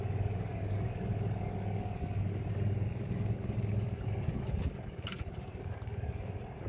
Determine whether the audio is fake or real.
fake